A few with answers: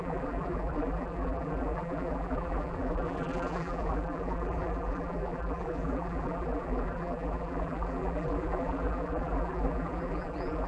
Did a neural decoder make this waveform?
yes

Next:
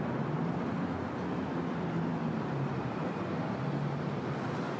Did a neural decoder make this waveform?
no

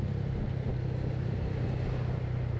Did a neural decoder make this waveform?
no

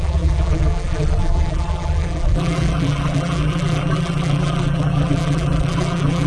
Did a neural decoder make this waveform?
yes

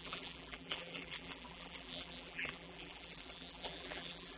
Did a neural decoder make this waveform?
yes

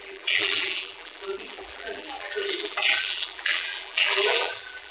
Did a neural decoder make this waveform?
yes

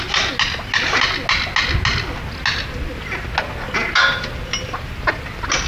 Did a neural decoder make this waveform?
no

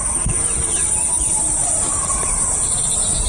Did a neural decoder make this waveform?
yes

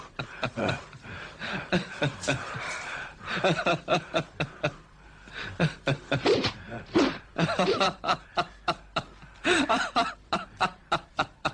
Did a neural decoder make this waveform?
yes